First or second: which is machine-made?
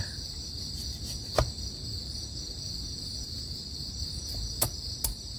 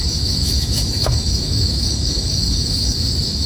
second